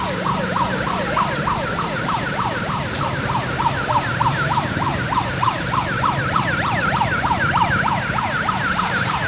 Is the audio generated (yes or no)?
yes